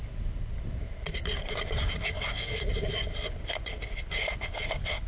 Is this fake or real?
real